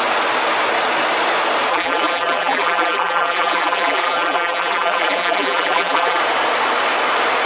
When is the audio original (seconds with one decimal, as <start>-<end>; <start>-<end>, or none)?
0.0-1.7; 6.2-7.5